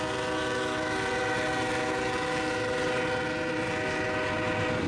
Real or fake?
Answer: real